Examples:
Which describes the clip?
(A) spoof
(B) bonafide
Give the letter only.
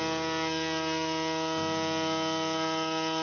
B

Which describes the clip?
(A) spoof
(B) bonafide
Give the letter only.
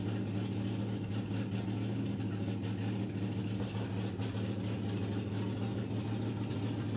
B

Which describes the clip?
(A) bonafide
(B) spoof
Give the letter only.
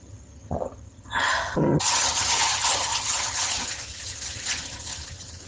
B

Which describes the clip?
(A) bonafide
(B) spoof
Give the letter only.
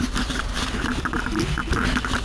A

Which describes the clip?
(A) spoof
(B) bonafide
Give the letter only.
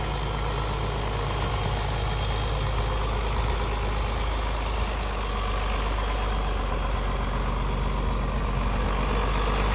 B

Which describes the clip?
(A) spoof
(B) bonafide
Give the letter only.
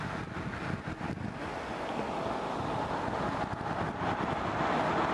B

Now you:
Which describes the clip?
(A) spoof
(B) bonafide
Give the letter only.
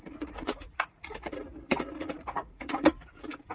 A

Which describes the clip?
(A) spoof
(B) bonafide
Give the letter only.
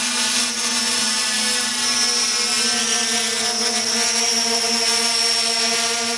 B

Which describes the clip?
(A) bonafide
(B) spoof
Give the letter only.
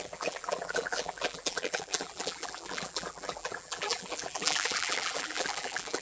B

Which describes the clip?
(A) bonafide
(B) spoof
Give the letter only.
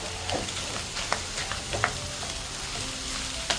A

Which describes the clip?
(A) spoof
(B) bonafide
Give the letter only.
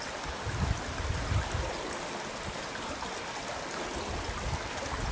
B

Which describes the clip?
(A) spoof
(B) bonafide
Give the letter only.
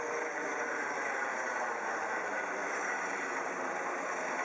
B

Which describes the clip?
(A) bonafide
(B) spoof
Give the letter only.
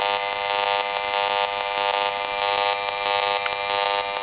A